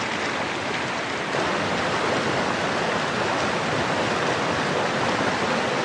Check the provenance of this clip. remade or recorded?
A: recorded